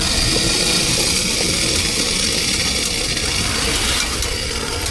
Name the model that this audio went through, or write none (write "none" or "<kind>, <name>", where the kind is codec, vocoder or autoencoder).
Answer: none